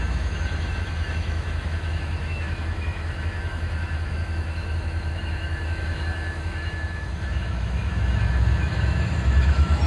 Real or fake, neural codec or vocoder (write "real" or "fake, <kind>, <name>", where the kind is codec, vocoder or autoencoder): fake, autoencoder, DAC-VAE